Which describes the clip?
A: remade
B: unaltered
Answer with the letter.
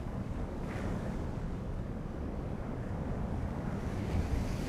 A